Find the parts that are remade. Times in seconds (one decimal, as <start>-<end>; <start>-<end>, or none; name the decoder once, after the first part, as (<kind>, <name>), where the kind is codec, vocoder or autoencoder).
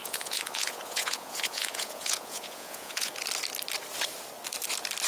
0.0-3.1 (vocoder, Vocos)